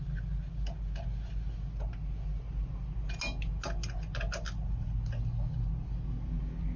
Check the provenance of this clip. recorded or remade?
recorded